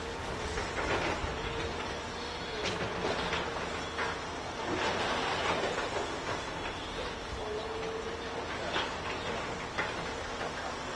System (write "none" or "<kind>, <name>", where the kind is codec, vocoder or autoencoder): none